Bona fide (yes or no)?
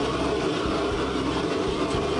yes